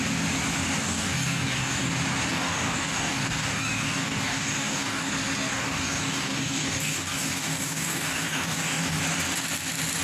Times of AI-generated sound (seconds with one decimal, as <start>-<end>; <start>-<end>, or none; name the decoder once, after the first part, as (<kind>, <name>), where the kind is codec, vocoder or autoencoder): 0.8-1.9 (codec, DAC); 2.3-5.1; 5.5-9.0